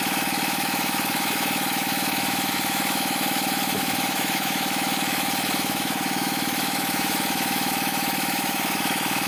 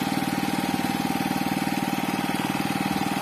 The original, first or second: second